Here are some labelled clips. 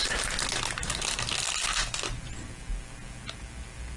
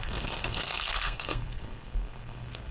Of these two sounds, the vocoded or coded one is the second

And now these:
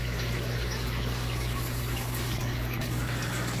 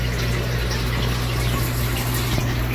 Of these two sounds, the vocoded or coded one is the first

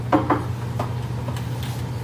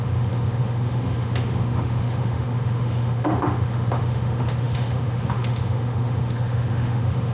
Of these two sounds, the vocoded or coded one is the second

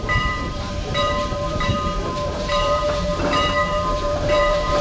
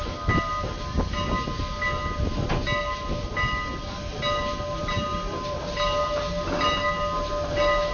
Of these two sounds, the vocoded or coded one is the first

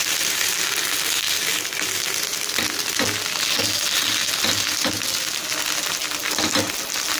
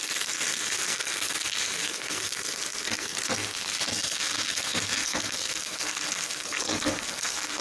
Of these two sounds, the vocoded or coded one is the second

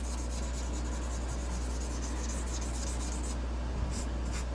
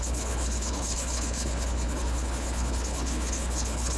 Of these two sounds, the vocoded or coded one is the second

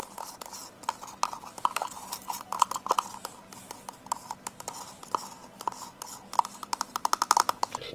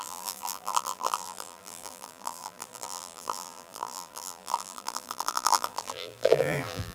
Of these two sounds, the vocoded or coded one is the second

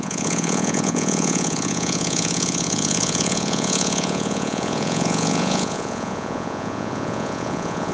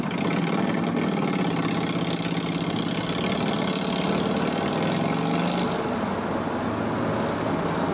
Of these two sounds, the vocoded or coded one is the first